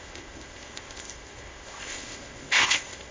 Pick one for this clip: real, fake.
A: fake